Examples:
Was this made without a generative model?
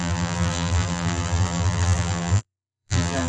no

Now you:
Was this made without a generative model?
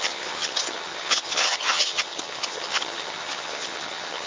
no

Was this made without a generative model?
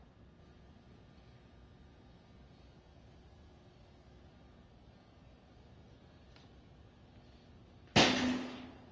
yes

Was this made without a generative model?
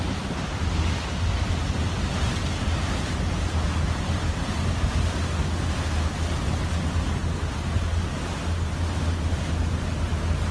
yes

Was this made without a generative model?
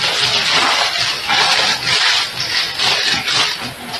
yes